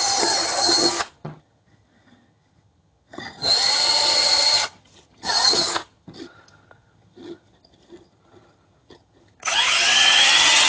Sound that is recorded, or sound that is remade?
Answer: remade